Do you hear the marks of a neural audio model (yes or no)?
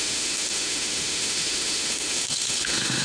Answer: yes